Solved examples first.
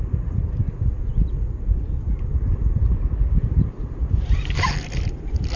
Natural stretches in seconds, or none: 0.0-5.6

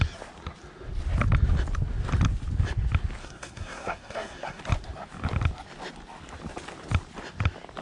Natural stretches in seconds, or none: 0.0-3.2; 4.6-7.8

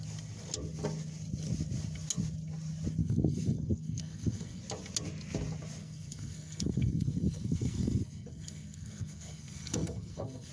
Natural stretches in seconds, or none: 0.0-3.0; 4.6-5.8

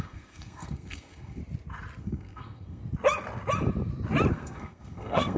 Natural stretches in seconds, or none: 1.4-2.0; 2.8-4.3